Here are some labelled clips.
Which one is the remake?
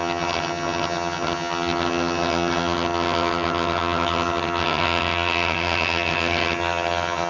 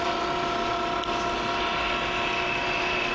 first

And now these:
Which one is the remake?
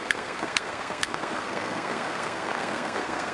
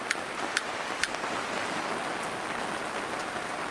first